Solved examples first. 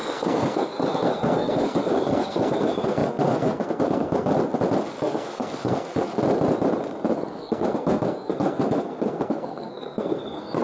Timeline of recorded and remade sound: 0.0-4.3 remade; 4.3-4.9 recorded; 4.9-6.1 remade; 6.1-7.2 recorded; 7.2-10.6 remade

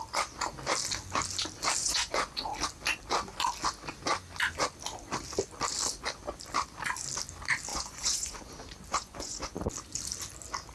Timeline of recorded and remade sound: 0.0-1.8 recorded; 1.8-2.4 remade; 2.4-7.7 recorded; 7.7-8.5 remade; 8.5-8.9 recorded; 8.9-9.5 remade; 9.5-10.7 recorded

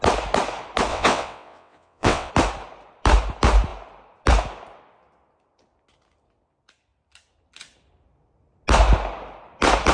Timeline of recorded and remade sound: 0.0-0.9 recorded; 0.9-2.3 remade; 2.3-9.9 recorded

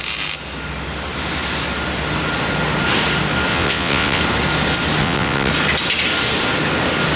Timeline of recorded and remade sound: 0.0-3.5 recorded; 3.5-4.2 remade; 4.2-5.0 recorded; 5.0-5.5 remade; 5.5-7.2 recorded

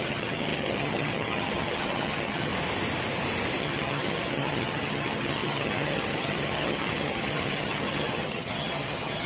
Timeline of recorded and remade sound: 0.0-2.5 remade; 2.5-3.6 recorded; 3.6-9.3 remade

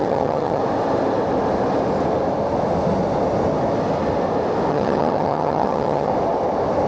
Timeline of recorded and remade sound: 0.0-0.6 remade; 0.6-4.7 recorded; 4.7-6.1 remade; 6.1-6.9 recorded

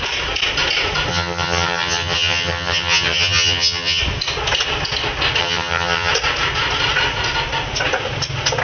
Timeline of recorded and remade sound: 0.0-1.1 recorded; 1.1-4.0 remade; 4.0-5.4 recorded; 5.4-6.1 remade; 6.1-8.6 recorded